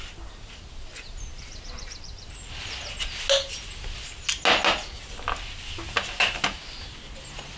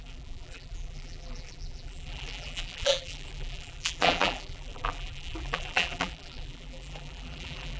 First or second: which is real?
first